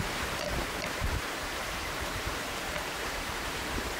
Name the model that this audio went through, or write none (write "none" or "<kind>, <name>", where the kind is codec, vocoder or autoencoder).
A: vocoder, BigVGAN v2